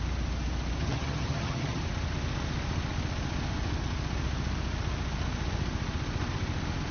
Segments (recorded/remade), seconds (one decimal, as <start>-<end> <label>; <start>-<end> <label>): 0.0-0.8 recorded; 0.8-1.8 remade; 1.8-6.9 recorded